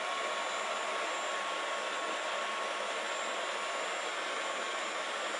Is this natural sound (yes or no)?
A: yes